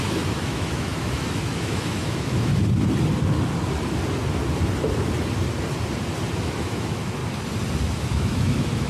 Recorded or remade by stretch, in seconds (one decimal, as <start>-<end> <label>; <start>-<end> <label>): 0.0-2.5 remade; 2.5-6.4 recorded; 6.4-7.2 remade; 7.2-8.0 recorded; 8.0-8.9 remade